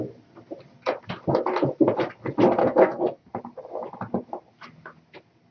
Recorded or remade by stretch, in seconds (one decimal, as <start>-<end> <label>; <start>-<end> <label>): 0.0-2.6 recorded; 2.6-3.3 remade; 3.3-5.5 recorded